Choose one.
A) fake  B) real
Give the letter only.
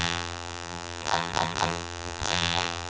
A